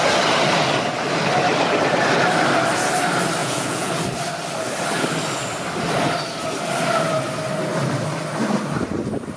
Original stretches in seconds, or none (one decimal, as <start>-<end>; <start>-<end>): 0.0-3.4; 3.9-9.4